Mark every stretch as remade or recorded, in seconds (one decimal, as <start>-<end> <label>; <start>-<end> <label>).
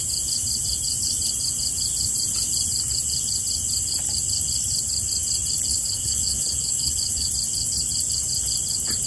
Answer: 0.0-5.7 recorded; 5.7-7.3 remade; 7.3-9.1 recorded